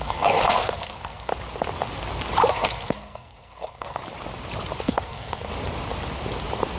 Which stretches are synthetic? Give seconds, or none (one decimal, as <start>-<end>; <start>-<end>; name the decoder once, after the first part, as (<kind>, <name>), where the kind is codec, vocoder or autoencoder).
0.0-1.3 (codec, SNAC); 2.5-4.0; 4.8-5.5